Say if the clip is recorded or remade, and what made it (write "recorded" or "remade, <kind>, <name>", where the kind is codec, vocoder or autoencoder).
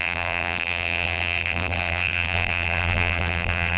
remade, vocoder, BigVGAN v2